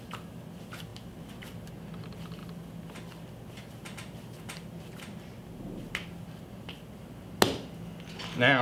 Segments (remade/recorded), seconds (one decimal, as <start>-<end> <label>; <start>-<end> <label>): 0.0-8.6 recorded